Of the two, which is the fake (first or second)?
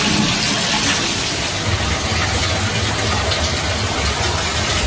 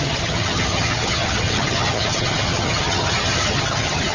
second